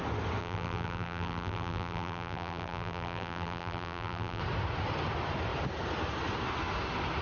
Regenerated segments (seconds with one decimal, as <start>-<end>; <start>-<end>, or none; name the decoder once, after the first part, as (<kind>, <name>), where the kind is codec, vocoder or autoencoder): 0.4-4.4 (vocoder, BigVGAN v2)